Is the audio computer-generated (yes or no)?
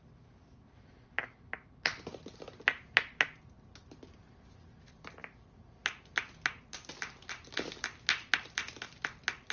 no